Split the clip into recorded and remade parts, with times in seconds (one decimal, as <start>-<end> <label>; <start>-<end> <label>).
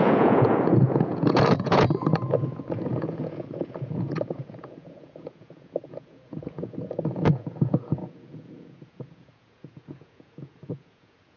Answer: 0.0-11.4 remade